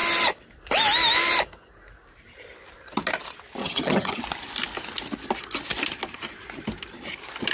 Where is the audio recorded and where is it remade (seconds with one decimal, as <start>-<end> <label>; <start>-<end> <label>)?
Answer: 0.0-3.6 recorded; 3.6-4.2 remade; 4.2-7.5 recorded